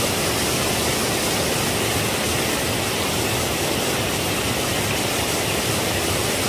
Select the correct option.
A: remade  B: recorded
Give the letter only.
B